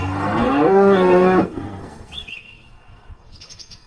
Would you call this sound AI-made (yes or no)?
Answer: yes